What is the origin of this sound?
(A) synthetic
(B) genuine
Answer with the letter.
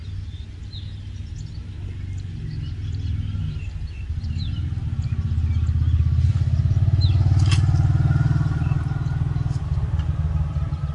B